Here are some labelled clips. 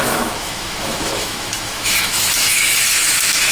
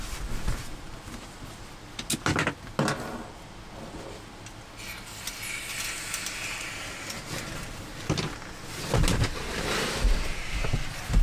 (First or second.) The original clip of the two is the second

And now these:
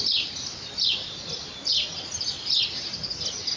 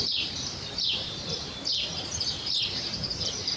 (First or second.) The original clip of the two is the first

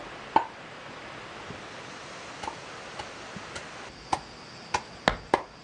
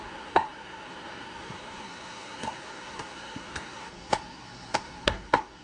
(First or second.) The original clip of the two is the first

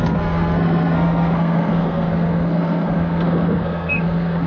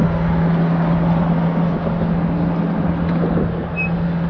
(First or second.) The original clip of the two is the second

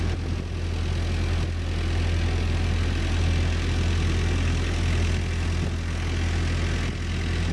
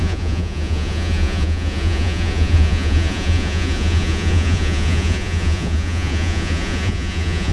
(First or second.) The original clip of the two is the first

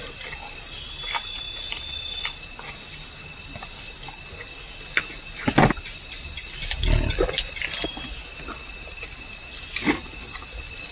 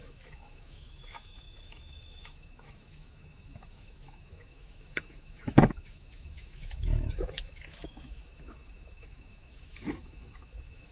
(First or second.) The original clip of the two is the first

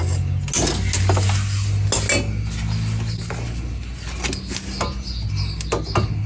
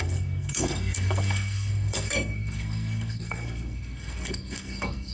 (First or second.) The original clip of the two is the first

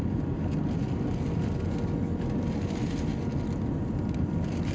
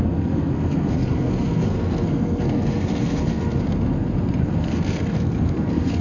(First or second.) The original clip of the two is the first